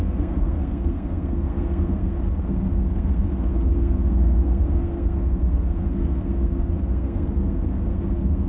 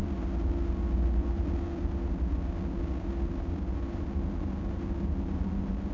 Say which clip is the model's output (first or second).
first